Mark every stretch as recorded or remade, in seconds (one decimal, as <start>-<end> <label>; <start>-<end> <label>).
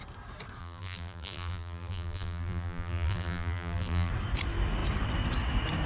0.0-0.6 recorded; 0.6-4.1 remade; 4.1-5.9 recorded